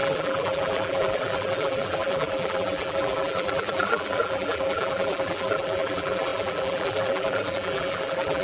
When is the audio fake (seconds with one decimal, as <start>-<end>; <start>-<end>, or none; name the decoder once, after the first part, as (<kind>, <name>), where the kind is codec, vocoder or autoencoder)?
0.0-8.4 (vocoder, BigVGAN v2)